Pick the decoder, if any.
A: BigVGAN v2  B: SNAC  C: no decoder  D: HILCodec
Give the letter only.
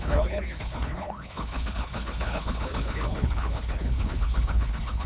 D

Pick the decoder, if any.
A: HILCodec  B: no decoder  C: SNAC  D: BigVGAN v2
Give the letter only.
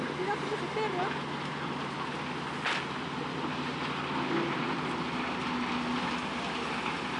B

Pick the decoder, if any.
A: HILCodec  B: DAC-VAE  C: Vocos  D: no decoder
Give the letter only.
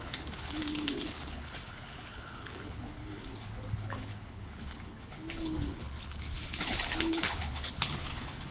A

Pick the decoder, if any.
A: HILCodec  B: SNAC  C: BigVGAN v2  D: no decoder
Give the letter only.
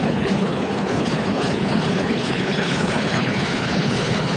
A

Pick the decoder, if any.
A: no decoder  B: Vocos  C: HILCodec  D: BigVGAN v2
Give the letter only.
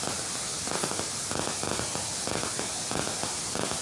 A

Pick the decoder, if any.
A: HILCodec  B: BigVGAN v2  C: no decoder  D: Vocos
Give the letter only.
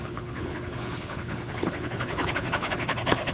A